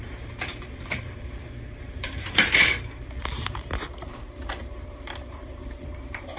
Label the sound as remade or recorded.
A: remade